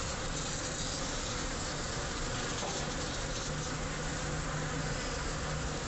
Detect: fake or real real